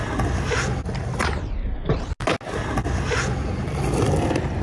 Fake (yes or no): no